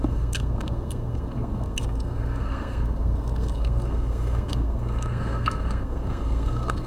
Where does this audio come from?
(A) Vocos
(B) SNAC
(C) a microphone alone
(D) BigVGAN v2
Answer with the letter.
B